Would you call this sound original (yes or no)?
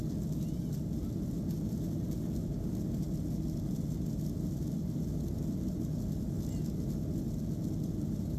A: yes